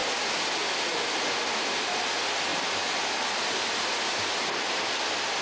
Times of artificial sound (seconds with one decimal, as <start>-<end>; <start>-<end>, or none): none